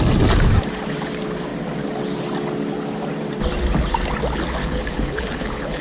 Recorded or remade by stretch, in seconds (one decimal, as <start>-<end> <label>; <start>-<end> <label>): 0.0-4.6 recorded; 4.6-5.8 remade